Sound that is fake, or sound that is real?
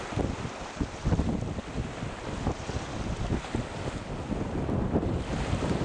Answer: real